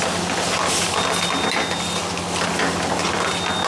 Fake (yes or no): no